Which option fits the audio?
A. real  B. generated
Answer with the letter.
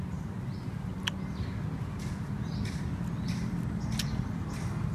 A